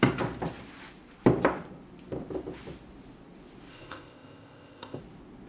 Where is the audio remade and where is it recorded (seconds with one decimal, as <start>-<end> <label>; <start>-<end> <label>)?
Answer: 0.0-3.7 recorded; 3.7-5.0 remade; 5.0-5.5 recorded